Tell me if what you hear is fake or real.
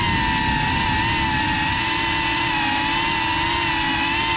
real